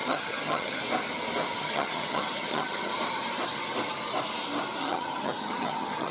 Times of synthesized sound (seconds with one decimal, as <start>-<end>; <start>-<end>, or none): 0.0-0.8; 1.6-2.9; 4.8-6.1